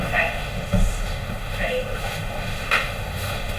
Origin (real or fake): fake